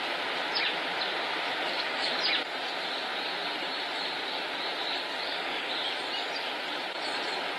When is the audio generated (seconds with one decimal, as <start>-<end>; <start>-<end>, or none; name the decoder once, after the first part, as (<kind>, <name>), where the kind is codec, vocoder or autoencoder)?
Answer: 1.6-2.1 (codec, DAC); 5.1-5.7